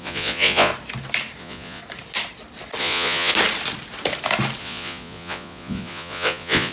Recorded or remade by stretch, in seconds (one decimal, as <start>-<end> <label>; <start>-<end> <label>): 0.0-0.7 remade; 0.7-1.4 recorded; 1.4-1.8 remade; 1.8-2.8 recorded; 2.8-3.3 remade; 3.3-4.6 recorded; 4.6-6.7 remade